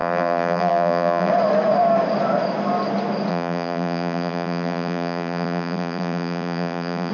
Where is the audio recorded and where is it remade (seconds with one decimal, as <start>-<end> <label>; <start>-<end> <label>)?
0.0-1.3 remade; 1.3-3.3 recorded; 3.3-7.1 remade